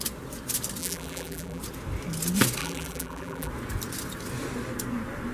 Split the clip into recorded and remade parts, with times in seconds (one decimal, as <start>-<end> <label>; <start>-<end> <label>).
0.0-0.8 recorded; 0.8-1.6 remade; 1.6-2.6 recorded; 2.6-3.5 remade; 3.5-5.3 recorded